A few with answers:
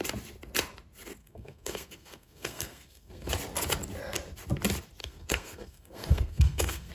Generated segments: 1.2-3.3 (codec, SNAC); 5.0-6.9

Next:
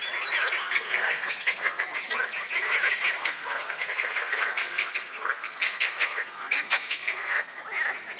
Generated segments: 0.6-1.8 (codec, SNAC); 3.2-7.6

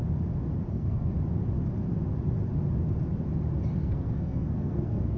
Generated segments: 0.7-1.1 (codec, SNAC); 3.8-5.2